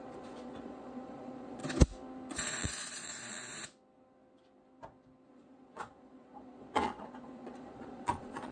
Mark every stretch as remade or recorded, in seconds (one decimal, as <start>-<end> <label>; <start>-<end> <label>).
0.0-1.6 remade; 1.6-2.3 recorded; 2.3-3.4 remade; 3.4-5.3 recorded; 5.3-8.5 remade